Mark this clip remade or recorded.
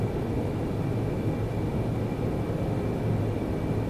recorded